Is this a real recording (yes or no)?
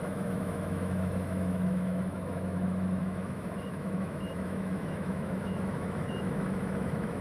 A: no